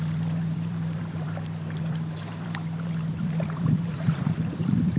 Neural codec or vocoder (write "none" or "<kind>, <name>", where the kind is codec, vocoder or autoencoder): vocoder, BigVGAN v2